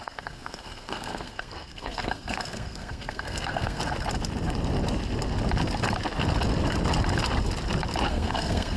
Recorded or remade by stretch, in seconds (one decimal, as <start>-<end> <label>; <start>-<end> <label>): 0.0-3.8 remade; 3.8-8.1 recorded; 8.1-8.8 remade